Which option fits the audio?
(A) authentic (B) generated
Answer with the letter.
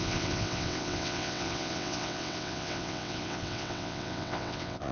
B